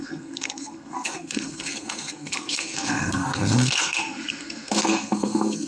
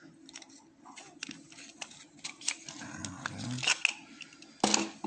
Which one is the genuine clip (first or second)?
second